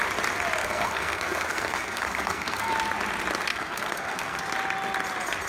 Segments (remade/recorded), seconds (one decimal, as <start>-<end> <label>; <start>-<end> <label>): 0.0-0.6 recorded; 0.6-2.7 remade; 2.7-3.5 recorded; 3.5-4.4 remade; 4.4-5.5 recorded